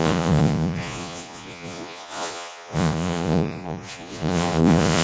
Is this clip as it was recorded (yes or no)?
no